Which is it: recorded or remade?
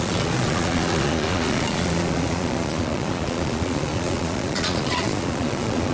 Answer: remade